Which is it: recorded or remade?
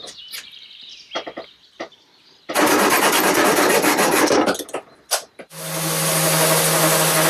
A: recorded